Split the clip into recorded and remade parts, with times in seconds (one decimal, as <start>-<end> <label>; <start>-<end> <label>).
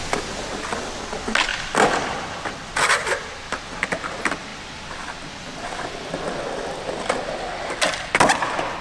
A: 0.0-1.5 recorded; 1.5-3.3 remade; 3.3-8.8 recorded